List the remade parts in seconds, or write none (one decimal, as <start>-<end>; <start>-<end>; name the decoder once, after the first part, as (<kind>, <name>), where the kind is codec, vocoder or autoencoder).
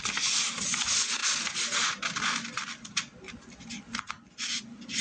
none